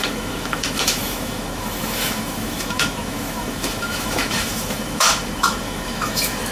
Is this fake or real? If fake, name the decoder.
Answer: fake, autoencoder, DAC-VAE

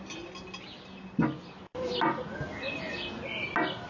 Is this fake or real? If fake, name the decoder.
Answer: real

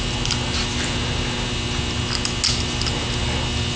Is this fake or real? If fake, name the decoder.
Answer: real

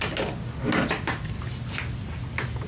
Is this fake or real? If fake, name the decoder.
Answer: real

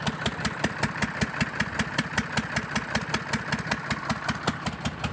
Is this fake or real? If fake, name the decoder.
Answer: real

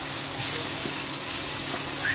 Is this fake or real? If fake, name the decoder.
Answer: fake, codec, DAC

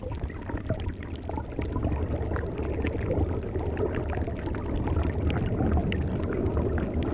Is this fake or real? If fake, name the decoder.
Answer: real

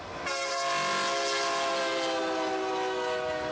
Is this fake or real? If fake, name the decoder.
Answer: real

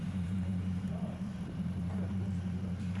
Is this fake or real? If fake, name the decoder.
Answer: fake, vocoder, BigVGAN v2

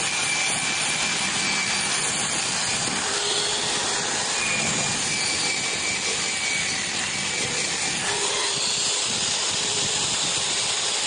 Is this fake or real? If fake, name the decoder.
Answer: real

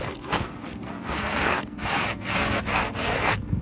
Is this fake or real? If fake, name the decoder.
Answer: fake, codec, SNAC